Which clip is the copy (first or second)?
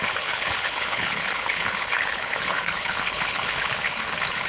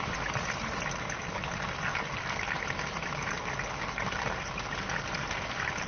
first